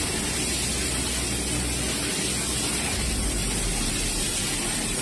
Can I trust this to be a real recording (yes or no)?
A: yes